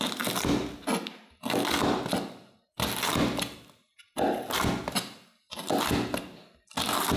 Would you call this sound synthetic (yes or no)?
no